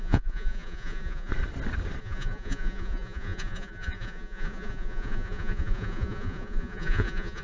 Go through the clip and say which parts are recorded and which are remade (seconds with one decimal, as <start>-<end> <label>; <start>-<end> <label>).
0.0-1.3 remade; 1.3-2.0 recorded; 2.0-7.4 remade